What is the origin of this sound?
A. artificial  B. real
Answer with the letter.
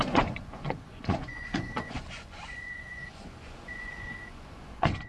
A